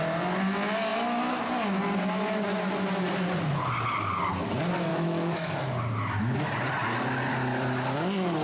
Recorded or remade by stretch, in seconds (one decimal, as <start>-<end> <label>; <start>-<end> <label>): 0.0-4.9 recorded; 4.9-5.5 remade; 5.5-8.4 recorded

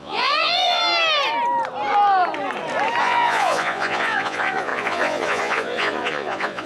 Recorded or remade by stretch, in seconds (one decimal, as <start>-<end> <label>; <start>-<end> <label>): 0.0-0.8 remade; 0.8-3.0 recorded; 3.0-6.7 remade

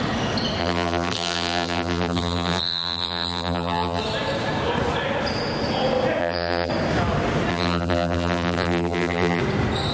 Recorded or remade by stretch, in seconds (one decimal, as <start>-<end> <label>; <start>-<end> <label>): 0.0-0.6 recorded; 0.6-4.0 remade; 4.0-6.2 recorded; 6.2-6.7 remade; 6.7-7.5 recorded; 7.5-9.4 remade; 9.4-9.9 recorded

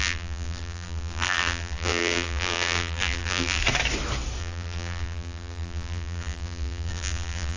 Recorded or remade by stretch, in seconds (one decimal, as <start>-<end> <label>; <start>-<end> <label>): 0.0-3.6 remade; 3.6-4.4 recorded; 4.4-7.6 remade

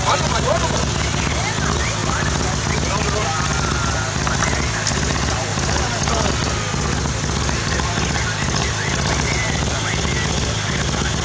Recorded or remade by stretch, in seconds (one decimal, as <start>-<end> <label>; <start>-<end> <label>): 0.0-11.2 recorded

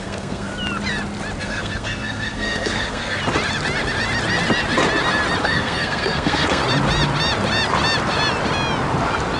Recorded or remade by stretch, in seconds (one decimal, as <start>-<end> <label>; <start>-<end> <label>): 0.0-0.5 remade; 0.5-1.4 recorded; 1.4-3.2 remade; 3.2-5.4 recorded; 5.4-6.6 remade; 6.6-9.4 recorded

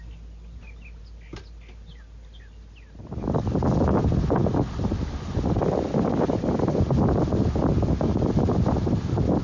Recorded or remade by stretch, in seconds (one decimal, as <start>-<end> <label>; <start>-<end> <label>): 0.0-9.4 recorded

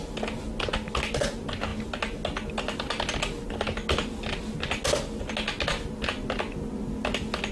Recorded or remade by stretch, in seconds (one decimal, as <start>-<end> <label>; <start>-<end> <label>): 0.0-7.5 recorded